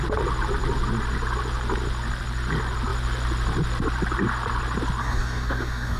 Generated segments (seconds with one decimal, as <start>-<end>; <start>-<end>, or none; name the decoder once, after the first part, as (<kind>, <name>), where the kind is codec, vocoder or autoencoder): 5.0-6.0 (codec, DAC)